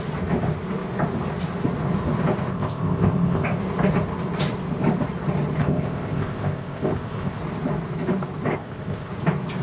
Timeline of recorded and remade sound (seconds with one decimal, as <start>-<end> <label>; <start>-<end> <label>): 0.0-2.5 recorded; 2.5-3.6 remade; 3.6-5.6 recorded; 5.6-7.4 remade; 7.4-8.5 recorded; 8.5-9.1 remade; 9.1-9.6 recorded